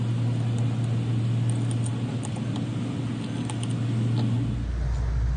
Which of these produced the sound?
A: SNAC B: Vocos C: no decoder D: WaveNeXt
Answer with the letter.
C